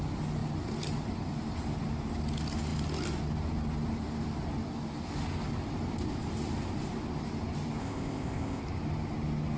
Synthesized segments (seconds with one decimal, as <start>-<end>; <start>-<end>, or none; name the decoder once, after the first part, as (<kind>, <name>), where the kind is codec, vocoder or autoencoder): 7.8-8.6 (codec, ZipCodec)